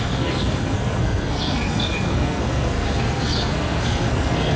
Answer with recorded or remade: remade